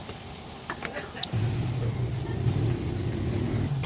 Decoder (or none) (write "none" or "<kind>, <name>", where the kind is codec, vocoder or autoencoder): none